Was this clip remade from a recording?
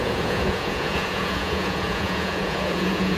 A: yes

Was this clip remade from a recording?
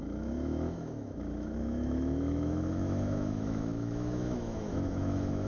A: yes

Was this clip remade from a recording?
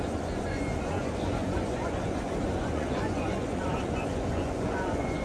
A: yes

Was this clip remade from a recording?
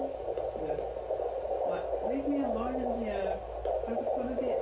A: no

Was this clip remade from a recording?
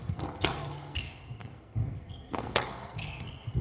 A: yes